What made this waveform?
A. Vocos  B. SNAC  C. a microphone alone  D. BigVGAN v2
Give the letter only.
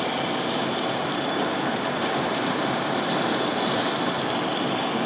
C